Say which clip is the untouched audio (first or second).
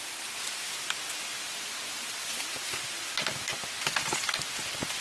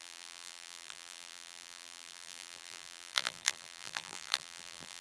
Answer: first